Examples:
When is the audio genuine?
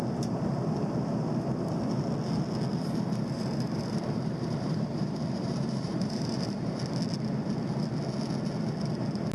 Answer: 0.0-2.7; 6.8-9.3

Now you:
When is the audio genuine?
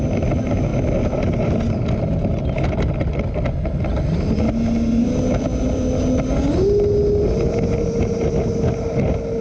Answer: 0.0-9.4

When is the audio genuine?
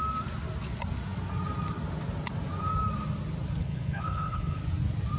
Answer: 0.0-3.6; 4.6-5.2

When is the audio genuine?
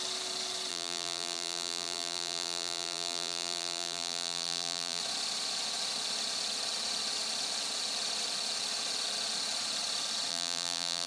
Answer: 0.0-0.7; 5.0-10.3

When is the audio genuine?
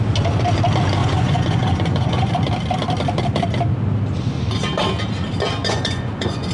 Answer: 0.0-1.0; 2.3-5.6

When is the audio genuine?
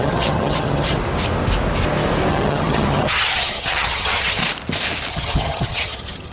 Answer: 1.0-2.3; 4.4-5.1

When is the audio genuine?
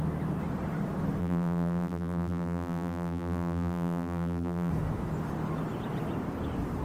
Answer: 0.0-1.2; 4.7-6.8